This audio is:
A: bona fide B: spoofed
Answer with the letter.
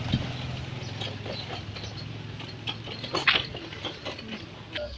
A